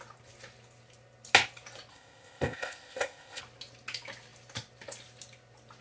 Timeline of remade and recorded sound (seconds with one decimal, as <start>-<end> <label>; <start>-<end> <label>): 0.0-1.9 recorded; 1.9-3.4 remade; 3.4-5.8 recorded